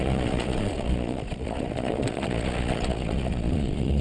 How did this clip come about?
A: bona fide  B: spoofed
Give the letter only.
B